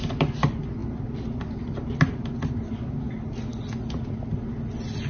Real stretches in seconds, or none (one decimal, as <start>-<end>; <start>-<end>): 0.0-5.1